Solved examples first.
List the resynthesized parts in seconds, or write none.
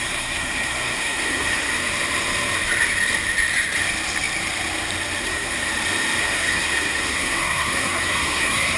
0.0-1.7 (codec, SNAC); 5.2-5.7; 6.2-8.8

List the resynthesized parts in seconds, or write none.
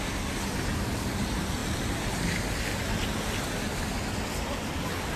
none